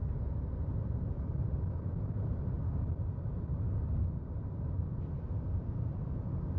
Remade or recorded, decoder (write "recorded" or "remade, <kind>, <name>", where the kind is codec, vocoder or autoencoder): recorded